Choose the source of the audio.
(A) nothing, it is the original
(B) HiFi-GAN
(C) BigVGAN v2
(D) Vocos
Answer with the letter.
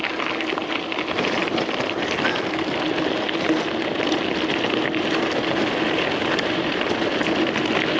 A